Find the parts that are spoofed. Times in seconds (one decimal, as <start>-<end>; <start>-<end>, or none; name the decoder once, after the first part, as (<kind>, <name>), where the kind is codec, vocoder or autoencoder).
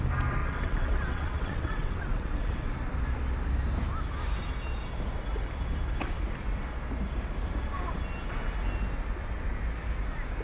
0.4-2.7 (vocoder, WaveNeXt)